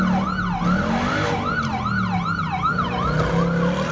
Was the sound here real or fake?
real